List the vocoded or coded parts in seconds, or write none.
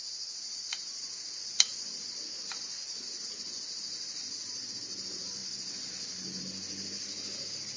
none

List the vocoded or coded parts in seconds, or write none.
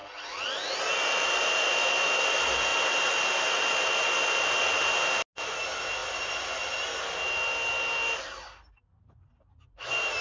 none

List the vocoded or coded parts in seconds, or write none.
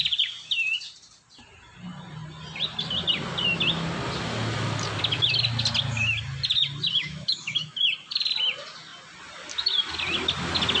7.0-7.8 (autoencoder, DAC-VAE)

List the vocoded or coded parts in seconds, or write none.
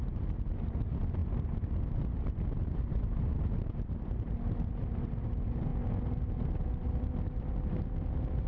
none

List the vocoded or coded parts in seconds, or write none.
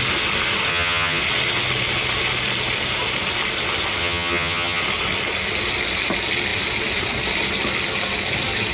0.7-1.2 (vocoder, HiFi-GAN); 4.0-4.8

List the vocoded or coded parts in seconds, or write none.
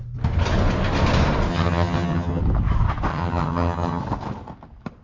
1.5-2.4 (vocoder, HiFi-GAN); 3.1-4.0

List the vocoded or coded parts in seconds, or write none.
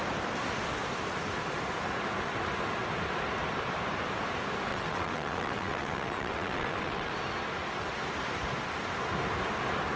4.7-7.1 (vocoder, WaveNeXt)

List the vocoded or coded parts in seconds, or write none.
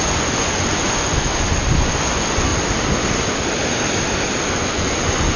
0.0-2.5 (vocoder, Vocos); 4.5-5.4